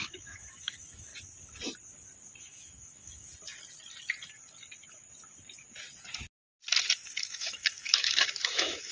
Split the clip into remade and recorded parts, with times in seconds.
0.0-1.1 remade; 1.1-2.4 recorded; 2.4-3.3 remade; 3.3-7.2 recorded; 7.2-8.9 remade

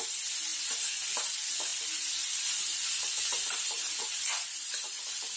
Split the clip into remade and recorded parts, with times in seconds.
0.0-5.4 recorded

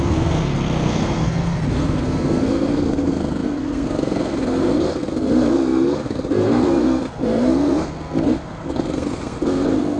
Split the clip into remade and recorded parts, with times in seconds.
0.0-10.0 remade

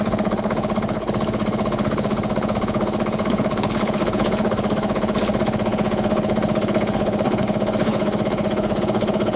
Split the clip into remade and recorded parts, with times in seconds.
0.0-9.4 remade

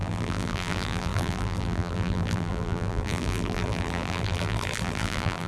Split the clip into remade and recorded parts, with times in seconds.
0.0-5.5 remade

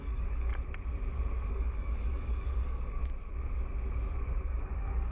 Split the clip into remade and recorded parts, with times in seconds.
0.0-0.5 remade; 0.5-1.5 recorded; 1.5-3.0 remade; 3.0-4.4 recorded; 4.4-5.1 remade